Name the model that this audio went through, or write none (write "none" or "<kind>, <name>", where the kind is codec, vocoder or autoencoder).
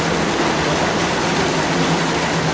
none